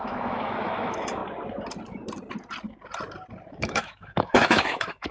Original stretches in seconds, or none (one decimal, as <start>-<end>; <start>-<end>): 1.2-3.5